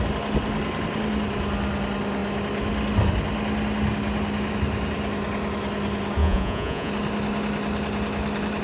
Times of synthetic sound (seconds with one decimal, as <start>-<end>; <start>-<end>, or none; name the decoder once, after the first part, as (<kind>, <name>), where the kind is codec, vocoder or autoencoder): 6.2-6.9 (vocoder, Vocos)